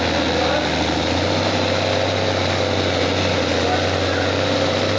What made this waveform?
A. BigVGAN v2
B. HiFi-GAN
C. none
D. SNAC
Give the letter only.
C